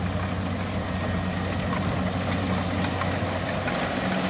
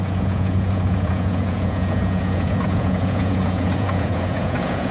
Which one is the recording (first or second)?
first